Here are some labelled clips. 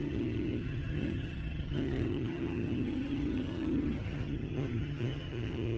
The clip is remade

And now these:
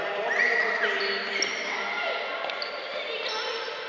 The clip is recorded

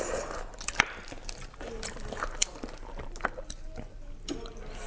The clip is recorded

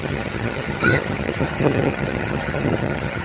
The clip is remade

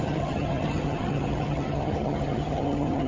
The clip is remade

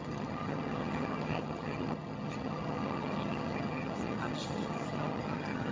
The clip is remade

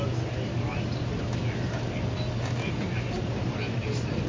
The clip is recorded